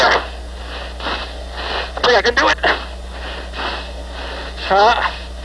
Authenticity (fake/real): real